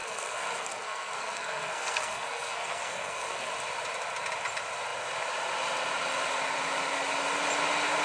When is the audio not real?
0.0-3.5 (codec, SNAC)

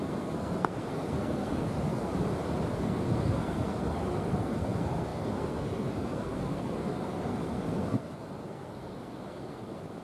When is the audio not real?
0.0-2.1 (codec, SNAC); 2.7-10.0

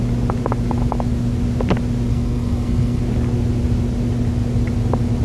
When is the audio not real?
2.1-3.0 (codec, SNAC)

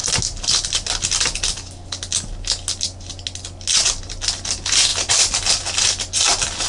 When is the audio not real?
none

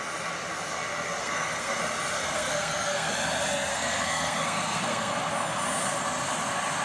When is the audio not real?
1.2-1.8 (codec, SNAC); 2.2-3.1; 3.7-5.1